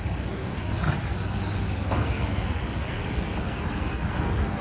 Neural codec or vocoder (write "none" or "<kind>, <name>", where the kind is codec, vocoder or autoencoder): codec, SNAC